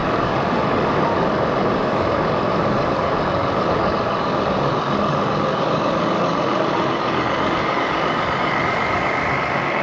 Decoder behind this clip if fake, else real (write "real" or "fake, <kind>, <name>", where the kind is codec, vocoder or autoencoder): fake, codec, DAC